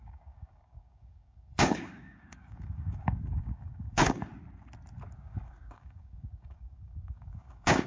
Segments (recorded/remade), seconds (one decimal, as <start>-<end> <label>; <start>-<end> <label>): 0.0-4.3 remade; 4.3-5.2 recorded; 5.2-7.9 remade